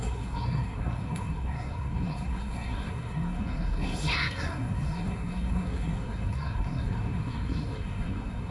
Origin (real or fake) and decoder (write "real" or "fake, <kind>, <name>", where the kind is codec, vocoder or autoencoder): fake, codec, SNAC